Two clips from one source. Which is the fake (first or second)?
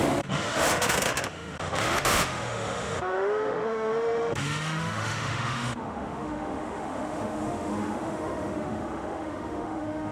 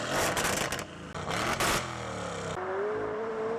first